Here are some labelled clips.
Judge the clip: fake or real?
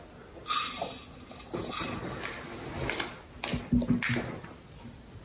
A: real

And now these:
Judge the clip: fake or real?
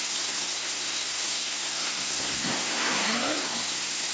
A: fake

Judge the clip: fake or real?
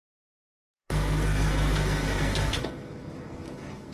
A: fake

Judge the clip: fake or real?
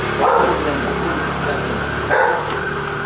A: real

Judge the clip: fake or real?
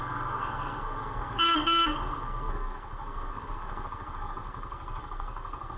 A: fake